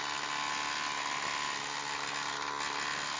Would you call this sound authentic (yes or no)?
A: yes